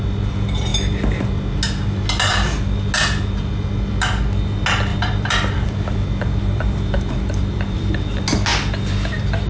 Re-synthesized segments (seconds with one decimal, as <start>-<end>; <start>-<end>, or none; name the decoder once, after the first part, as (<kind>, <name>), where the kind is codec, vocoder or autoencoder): 4.9-7.9 (vocoder, BigVGAN v2)